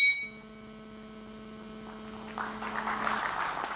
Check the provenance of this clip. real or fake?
real